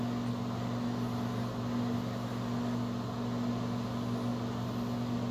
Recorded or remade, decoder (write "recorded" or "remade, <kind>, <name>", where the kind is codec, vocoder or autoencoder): recorded